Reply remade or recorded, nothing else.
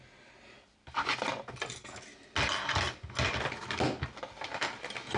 recorded